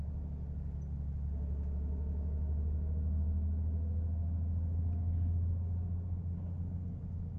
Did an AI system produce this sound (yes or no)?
no